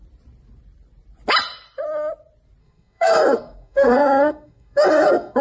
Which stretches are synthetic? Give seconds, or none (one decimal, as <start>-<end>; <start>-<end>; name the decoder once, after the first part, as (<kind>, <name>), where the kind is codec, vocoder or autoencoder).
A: 2.6-5.4 (codec, SNAC)